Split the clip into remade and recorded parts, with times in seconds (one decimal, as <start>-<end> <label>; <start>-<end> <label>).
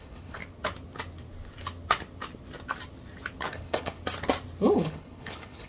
0.0-0.4 remade; 0.4-3.5 recorded; 3.5-4.0 remade; 4.0-4.7 recorded; 4.7-5.7 remade